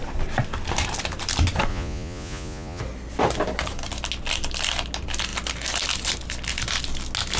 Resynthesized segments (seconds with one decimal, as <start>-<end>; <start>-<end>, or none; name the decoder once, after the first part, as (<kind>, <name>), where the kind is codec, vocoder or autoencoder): 1.7-2.8 (vocoder, Vocos)